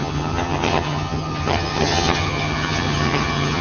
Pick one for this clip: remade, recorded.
remade